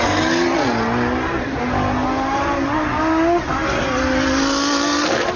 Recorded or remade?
recorded